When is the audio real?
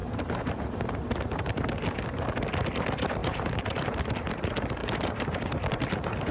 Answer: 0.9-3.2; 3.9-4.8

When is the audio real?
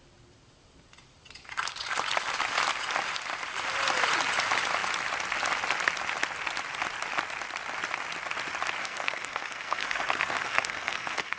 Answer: 0.0-8.8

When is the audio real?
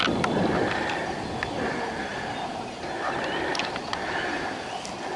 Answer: 0.0-5.2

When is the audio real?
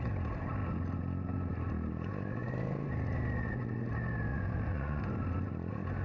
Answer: 0.0-4.3; 5.0-6.0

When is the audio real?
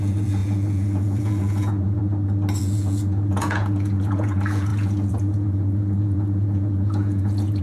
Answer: 2.0-2.6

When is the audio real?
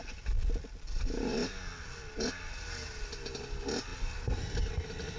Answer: 3.9-4.6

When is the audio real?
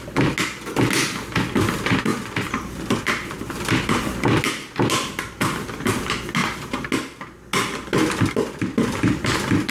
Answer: 0.0-9.7